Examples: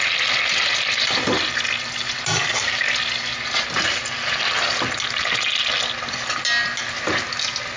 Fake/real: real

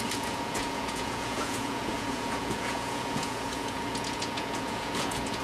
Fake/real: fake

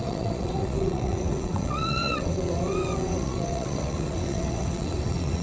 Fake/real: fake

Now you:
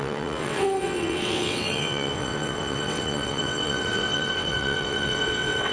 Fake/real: fake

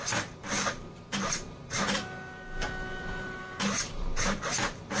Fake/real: fake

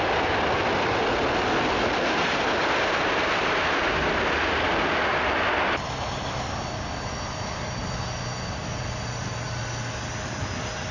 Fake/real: real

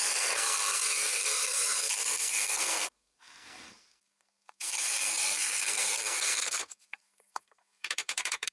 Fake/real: fake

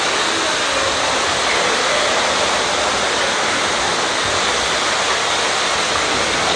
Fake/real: real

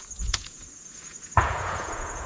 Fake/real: fake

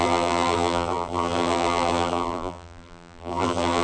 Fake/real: fake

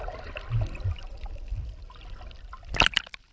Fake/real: real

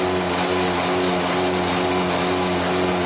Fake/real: real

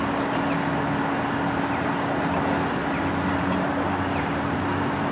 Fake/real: real